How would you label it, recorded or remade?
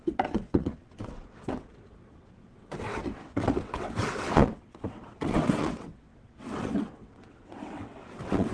remade